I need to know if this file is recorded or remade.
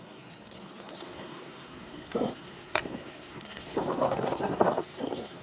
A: remade